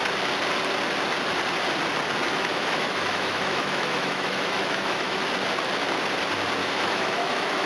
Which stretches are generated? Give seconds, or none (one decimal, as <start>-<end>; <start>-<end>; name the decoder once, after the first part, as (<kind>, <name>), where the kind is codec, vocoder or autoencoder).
2.3-5.2 (autoencoder, DAC-VAE); 6.6-7.7